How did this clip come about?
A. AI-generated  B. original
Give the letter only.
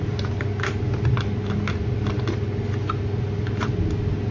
B